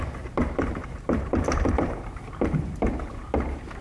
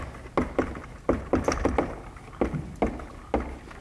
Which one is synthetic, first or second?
first